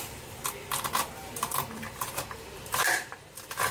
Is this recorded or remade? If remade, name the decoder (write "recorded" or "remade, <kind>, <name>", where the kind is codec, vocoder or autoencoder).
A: remade, vocoder, BigVGAN v2